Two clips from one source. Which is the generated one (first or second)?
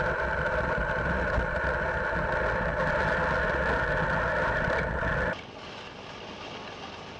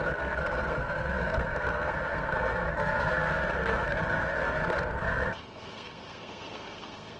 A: second